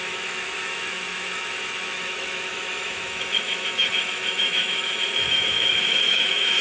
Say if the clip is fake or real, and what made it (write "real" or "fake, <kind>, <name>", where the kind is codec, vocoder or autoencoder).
fake, autoencoder, DAC-VAE